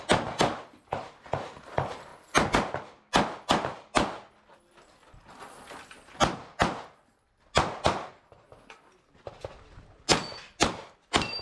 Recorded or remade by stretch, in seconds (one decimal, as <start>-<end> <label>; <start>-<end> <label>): 0.0-11.4 recorded

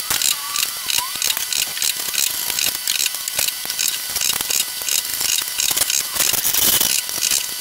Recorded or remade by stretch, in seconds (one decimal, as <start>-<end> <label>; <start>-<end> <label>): 0.0-5.1 recorded; 5.1-6.0 remade; 6.0-7.6 recorded

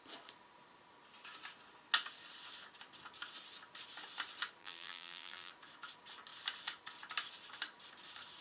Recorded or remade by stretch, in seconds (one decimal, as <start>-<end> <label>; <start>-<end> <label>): 0.0-4.6 recorded; 4.6-5.5 remade; 5.5-8.4 recorded

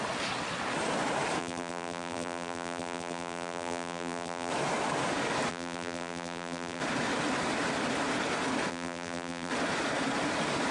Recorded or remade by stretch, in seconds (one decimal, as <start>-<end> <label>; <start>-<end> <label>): 0.0-1.4 recorded; 1.4-4.5 remade; 4.5-5.5 recorded; 5.5-6.8 remade; 6.8-8.7 recorded; 8.7-9.5 remade; 9.5-10.7 recorded

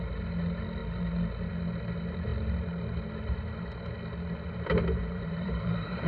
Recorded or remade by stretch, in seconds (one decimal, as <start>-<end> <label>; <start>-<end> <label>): 0.0-5.0 recorded; 5.0-6.1 remade

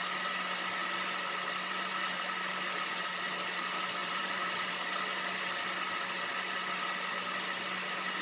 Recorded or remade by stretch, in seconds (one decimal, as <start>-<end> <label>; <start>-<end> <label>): 0.0-4.0 recorded; 4.0-4.7 remade; 4.7-8.2 recorded